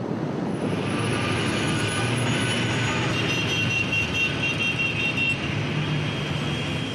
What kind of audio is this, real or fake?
real